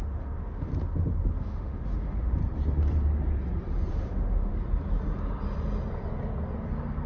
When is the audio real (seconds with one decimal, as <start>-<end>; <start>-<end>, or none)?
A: 0.7-1.4; 2.4-3.9; 4.5-7.1